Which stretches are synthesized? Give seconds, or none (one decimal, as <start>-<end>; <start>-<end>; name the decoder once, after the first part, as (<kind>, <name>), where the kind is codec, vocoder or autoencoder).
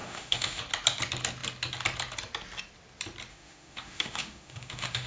0.0-0.6 (autoencoder, DAC-VAE); 3.3-5.1